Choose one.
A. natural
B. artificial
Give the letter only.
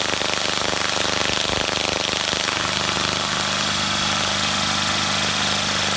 A